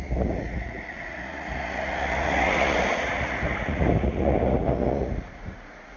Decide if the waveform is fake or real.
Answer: fake